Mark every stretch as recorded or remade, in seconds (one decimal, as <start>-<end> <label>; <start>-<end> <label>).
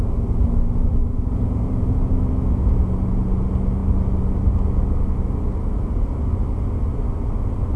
0.0-0.9 recorded; 0.9-2.8 remade; 2.8-7.8 recorded